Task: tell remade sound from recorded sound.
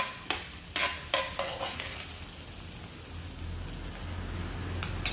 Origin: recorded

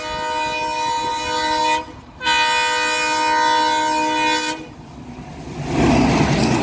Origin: recorded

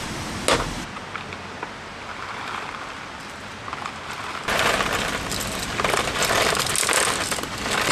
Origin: recorded